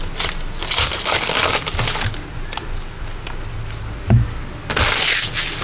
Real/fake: real